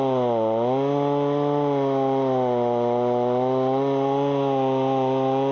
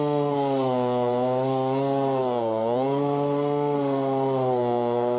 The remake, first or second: second